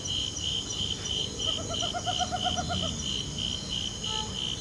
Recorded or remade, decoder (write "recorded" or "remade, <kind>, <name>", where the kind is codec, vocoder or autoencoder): recorded